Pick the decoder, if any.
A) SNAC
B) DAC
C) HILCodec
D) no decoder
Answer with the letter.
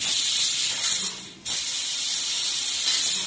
D